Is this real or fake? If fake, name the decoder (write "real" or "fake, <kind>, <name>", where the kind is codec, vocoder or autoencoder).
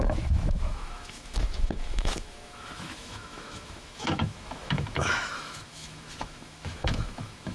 fake, autoencoder, DAC-VAE